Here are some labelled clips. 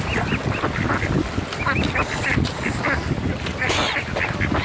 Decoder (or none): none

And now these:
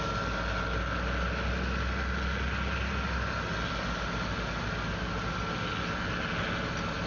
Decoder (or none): none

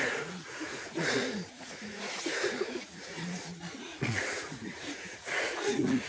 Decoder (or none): vocoder, Vocos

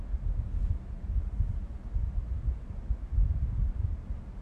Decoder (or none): none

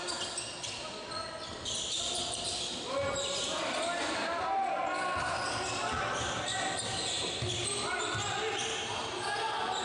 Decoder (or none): none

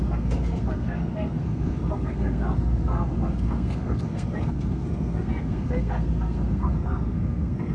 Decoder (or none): codec, SNAC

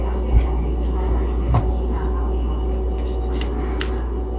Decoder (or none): none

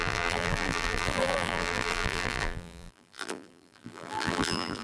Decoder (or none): vocoder, BigVGAN v2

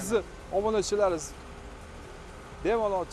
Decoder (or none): none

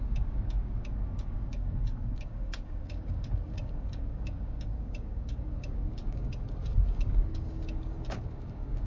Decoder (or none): codec, DAC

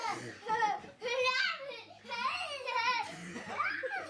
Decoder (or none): none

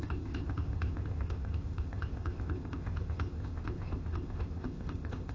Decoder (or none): codec, ZipCodec